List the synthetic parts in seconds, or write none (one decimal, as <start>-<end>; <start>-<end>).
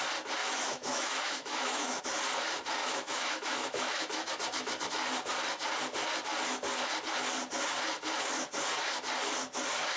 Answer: 0.4-2.0; 2.8-4.3